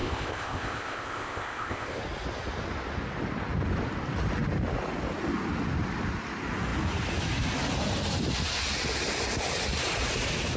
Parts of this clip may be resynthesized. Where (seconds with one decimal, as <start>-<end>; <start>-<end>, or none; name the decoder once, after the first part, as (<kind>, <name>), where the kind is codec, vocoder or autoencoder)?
0.0-2.0 (codec, ZipCodec)